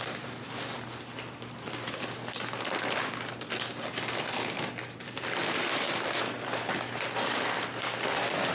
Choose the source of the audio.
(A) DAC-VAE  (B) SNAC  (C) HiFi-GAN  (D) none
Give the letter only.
D